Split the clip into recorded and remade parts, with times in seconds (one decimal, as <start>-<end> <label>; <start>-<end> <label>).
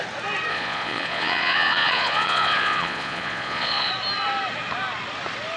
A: 0.0-0.5 recorded; 0.5-3.9 remade; 3.9-5.6 recorded